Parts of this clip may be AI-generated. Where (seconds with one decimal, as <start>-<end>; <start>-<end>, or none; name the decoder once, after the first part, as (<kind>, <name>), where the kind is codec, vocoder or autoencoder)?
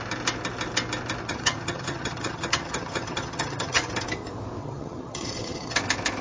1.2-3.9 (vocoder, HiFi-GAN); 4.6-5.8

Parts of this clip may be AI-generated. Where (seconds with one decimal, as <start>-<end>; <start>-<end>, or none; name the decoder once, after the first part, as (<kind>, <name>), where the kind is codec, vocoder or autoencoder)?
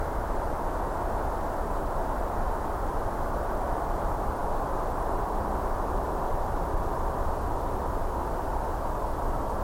4.4-7.7 (vocoder, BigVGAN v2)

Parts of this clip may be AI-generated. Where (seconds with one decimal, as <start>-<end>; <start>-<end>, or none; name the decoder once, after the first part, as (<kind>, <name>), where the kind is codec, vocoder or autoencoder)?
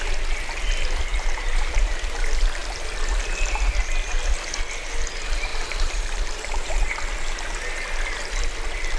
1.1-1.9 (vocoder, BigVGAN v2); 5.5-6.9